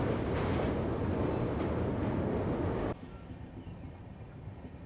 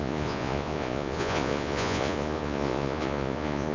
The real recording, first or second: first